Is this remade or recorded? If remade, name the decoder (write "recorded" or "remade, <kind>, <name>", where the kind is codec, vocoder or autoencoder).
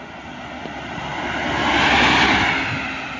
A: recorded